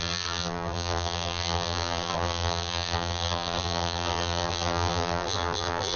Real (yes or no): no